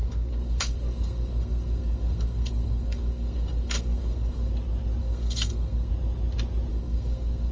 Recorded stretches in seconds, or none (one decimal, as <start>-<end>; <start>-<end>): 4.5-5.0; 5.9-6.7